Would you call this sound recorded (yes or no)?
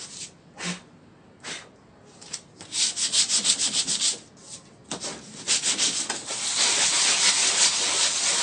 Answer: yes